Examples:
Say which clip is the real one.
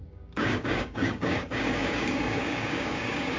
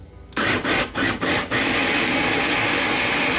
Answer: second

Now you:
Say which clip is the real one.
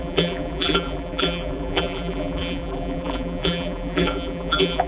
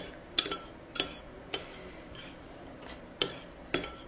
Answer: second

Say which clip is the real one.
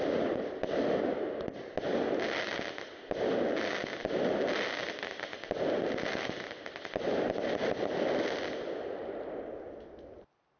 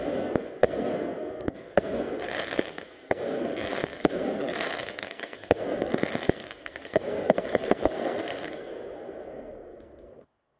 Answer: first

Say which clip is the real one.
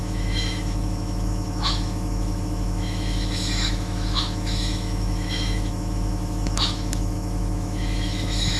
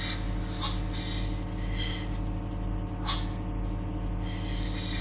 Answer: second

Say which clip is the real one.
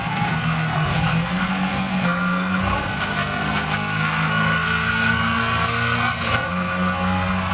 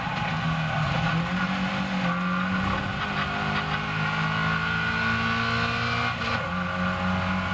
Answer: second